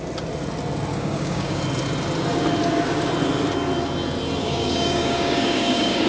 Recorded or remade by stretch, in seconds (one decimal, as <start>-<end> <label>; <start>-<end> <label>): 0.0-0.9 recorded; 0.9-1.6 remade; 1.6-4.4 recorded; 4.4-6.1 remade